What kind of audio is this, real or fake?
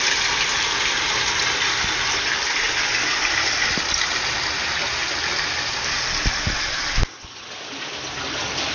real